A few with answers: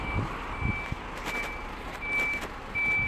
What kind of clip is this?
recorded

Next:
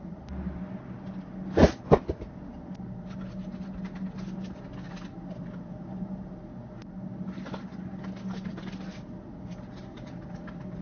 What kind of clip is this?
recorded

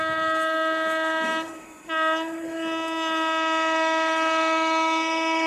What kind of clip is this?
remade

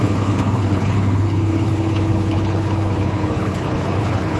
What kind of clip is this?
remade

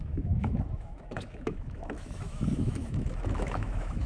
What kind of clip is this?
remade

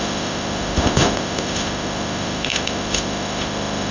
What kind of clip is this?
remade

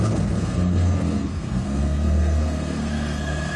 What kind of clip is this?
remade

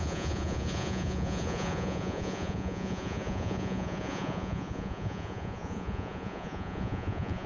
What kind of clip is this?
remade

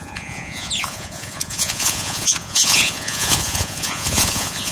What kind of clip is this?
remade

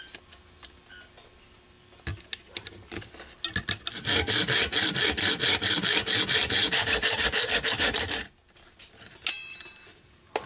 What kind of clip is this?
recorded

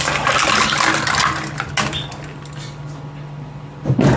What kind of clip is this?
remade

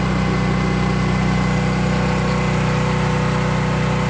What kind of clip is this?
recorded